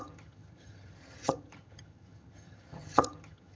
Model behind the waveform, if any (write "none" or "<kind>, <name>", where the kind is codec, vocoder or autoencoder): vocoder, HiFi-GAN